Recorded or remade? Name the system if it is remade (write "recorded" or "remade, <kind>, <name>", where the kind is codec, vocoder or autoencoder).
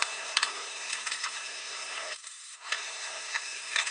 remade, codec, SNAC